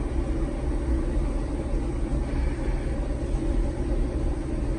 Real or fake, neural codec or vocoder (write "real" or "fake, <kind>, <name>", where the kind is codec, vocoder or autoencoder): real